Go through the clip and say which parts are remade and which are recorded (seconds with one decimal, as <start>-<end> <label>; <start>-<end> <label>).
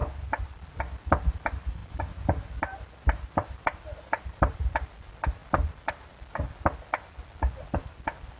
0.0-5.4 remade; 5.4-7.8 recorded; 7.8-8.4 remade